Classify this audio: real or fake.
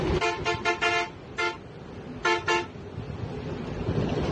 real